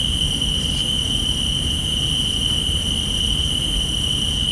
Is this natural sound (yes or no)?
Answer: yes